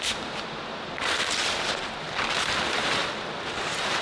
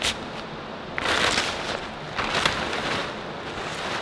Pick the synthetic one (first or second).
first